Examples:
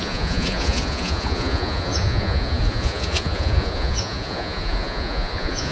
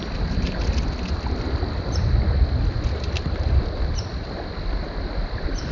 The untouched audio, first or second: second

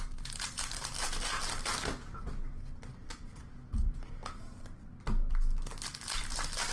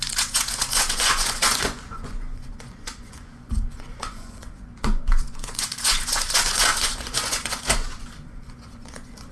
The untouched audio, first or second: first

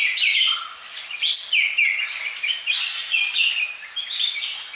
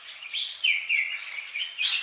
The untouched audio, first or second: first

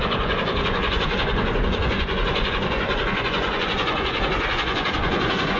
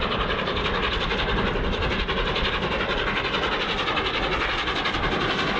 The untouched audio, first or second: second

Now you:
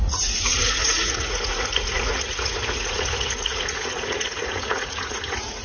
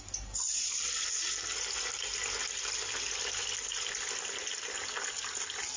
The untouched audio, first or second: second